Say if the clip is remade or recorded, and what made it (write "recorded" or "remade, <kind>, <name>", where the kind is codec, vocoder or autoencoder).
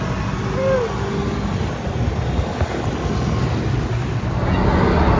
recorded